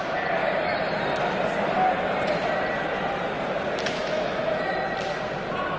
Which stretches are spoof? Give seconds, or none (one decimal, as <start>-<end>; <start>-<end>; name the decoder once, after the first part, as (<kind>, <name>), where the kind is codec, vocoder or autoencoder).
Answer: 4.0-4.6 (autoencoder, DAC-VAE)